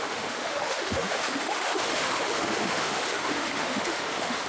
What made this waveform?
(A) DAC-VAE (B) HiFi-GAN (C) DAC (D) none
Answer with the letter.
A